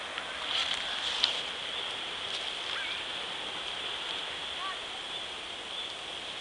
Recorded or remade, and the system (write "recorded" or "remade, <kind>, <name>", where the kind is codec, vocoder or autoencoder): recorded